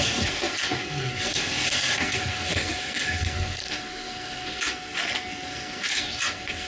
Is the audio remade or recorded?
remade